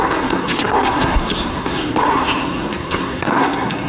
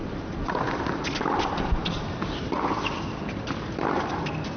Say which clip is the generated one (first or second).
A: first